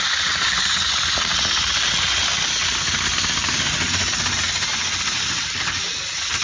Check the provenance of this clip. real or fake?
real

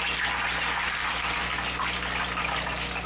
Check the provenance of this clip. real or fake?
real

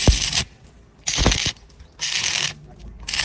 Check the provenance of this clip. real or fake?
real